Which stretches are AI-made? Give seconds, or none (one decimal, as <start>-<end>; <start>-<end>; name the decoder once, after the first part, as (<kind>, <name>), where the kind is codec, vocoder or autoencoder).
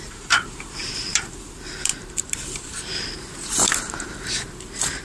0.0-5.0 (vocoder, BigVGAN v2)